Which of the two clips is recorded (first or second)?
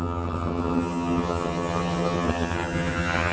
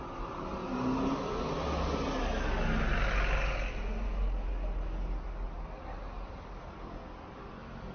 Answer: second